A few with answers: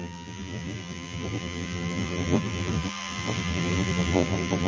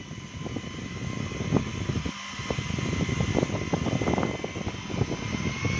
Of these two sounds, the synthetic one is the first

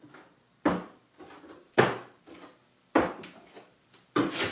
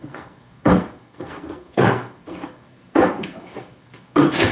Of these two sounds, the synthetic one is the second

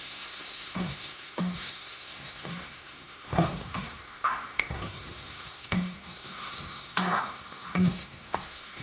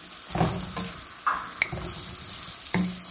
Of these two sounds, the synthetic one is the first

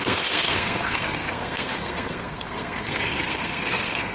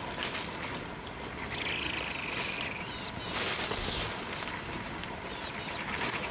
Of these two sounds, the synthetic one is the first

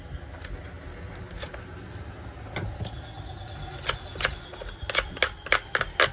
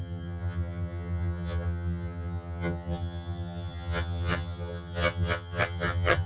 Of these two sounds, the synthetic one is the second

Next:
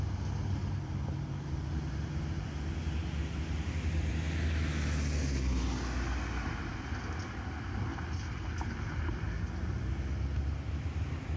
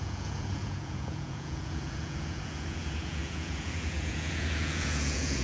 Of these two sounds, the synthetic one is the second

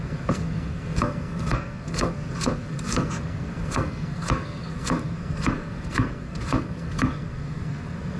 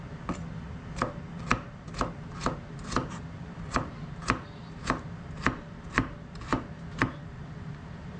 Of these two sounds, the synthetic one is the first